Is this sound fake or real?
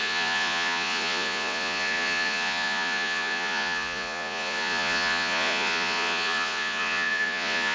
fake